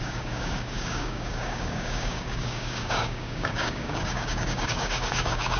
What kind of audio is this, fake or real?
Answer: fake